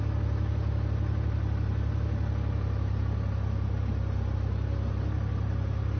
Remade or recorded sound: recorded